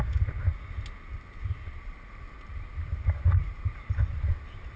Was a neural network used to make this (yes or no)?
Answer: no